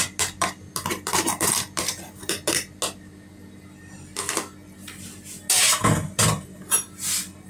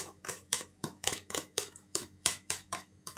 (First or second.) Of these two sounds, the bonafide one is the first